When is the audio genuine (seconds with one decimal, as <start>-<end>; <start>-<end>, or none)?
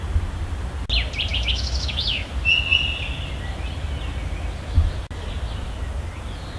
0.0-1.3; 2.3-6.6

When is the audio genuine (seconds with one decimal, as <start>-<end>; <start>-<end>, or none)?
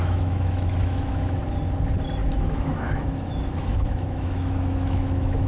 1.4-2.2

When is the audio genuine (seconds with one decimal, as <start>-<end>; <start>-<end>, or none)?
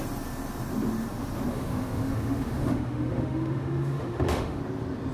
0.0-1.5; 4.6-5.1